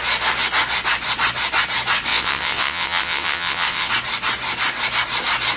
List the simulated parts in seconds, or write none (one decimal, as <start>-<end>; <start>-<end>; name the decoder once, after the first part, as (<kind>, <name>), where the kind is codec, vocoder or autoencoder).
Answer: 2.1-3.9 (vocoder, WaveNeXt)